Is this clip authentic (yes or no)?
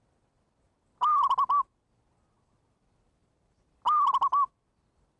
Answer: yes